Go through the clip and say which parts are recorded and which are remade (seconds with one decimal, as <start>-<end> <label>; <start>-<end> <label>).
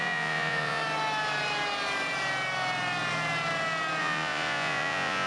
0.0-0.8 remade; 0.8-4.0 recorded; 4.0-5.3 remade